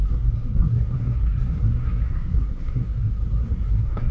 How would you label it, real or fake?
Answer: fake